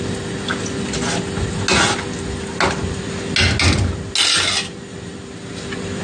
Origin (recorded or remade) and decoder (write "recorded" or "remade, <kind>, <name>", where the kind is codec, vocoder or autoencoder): recorded